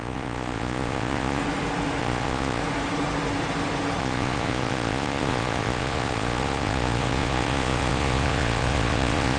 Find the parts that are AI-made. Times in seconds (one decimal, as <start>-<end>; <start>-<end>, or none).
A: 0.0-1.4; 2.0-2.6; 4.0-9.4

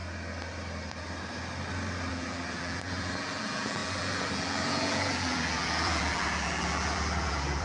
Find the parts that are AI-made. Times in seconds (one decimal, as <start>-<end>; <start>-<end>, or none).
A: 2.1-7.6

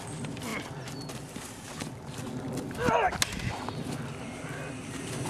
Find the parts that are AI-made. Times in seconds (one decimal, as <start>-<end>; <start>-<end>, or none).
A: none

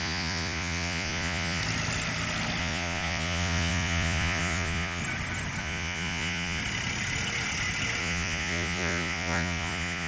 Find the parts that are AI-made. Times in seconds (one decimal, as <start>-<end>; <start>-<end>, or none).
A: 0.0-1.6; 2.6-5.0; 5.6-6.6; 8.0-10.1

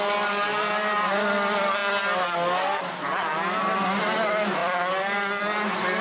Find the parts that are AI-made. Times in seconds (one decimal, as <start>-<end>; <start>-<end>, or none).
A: none

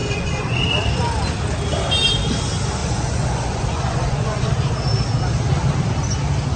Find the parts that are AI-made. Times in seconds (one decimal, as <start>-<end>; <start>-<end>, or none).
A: 0.0-0.7; 2.8-4.5